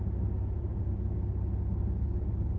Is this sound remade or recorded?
recorded